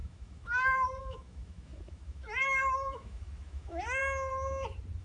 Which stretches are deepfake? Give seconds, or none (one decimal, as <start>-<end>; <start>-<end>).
0.0-4.0